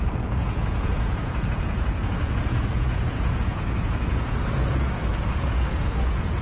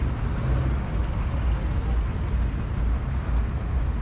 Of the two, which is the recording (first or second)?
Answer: second